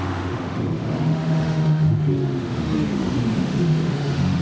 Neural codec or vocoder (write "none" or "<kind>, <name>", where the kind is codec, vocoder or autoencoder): autoencoder, DAC-VAE